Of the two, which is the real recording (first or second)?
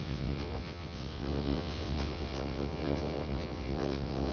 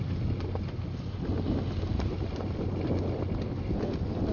second